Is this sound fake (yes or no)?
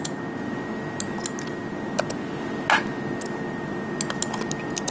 no